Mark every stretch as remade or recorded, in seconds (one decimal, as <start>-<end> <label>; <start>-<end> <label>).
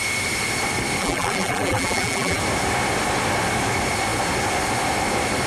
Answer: 0.0-1.0 recorded; 1.0-2.4 remade; 2.4-5.5 recorded